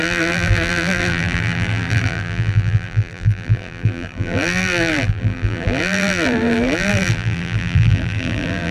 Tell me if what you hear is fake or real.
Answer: fake